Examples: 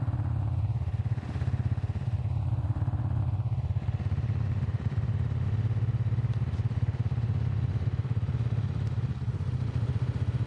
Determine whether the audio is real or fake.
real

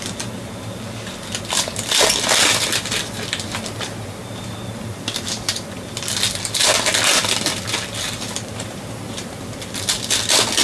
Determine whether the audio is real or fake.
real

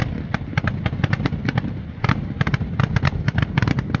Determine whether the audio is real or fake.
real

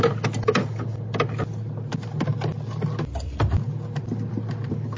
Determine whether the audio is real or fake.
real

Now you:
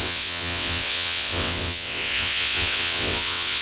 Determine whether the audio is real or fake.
fake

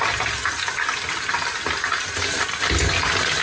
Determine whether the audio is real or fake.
real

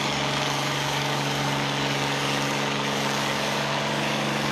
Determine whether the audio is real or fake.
fake